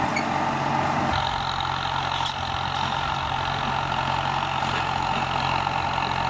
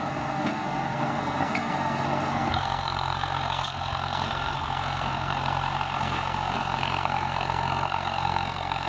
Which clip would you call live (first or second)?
first